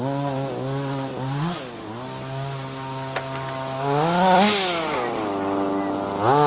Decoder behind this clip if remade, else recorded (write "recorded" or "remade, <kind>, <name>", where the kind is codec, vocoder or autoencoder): recorded